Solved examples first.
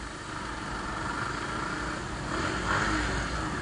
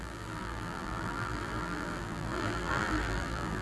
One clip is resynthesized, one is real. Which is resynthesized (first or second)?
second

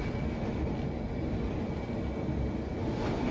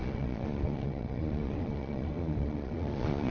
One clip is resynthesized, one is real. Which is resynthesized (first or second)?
second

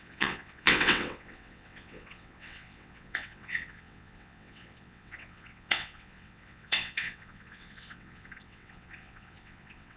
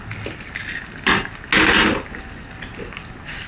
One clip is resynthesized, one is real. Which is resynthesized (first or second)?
first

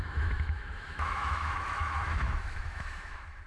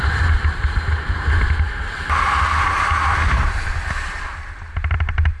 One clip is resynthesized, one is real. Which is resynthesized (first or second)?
first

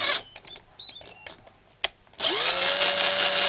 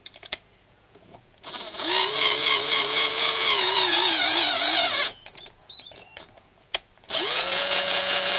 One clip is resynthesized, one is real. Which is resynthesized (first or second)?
second